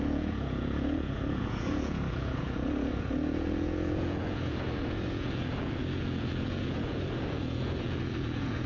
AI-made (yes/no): yes